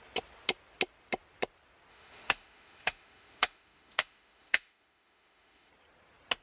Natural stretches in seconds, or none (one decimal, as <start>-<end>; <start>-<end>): 0.0-1.9; 5.7-6.4